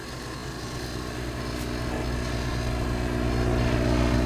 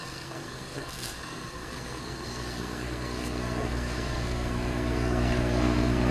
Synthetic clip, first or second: second